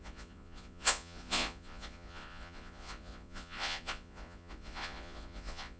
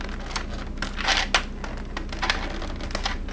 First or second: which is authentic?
second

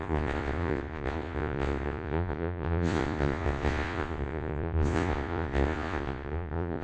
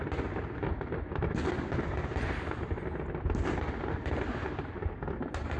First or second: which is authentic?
second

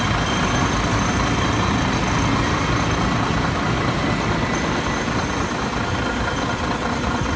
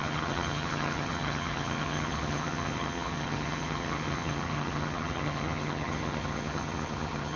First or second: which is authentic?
first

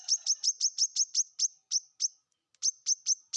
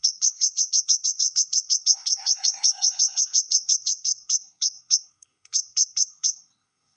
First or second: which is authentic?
first